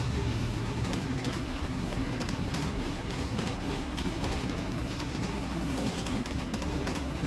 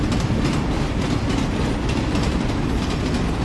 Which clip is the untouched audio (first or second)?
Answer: second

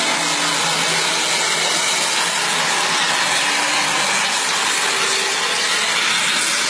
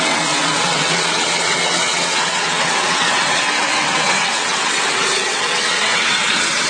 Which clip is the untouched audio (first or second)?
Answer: first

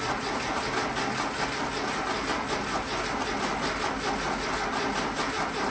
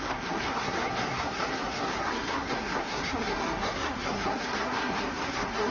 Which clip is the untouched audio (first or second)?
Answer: first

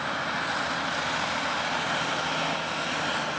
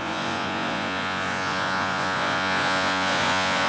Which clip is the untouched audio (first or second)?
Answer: first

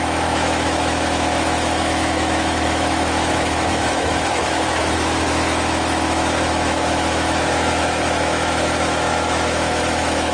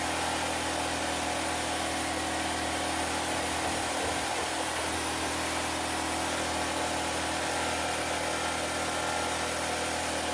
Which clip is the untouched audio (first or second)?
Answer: second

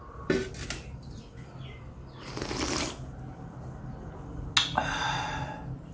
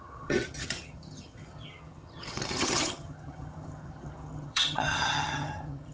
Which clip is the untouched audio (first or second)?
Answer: first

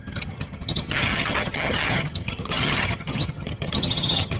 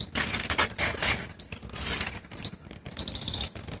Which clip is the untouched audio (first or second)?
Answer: second